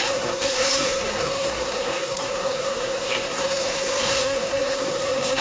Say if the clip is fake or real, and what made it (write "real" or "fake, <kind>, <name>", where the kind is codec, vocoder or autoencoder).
fake, codec, SNAC